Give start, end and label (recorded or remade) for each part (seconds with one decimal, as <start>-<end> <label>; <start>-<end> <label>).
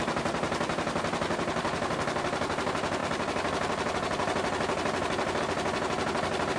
0.0-3.0 recorded; 3.0-5.4 remade; 5.4-6.6 recorded